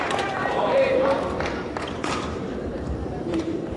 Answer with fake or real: fake